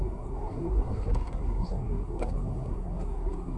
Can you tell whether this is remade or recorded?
remade